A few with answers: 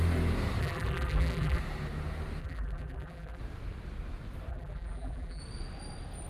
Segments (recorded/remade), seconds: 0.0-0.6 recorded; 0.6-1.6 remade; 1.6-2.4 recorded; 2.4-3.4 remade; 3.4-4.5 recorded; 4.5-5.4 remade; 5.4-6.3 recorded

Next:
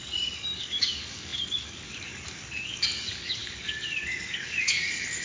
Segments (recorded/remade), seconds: 0.0-5.2 remade